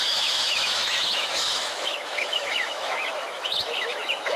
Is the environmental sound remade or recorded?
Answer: remade